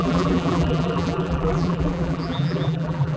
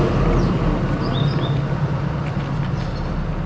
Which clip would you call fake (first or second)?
first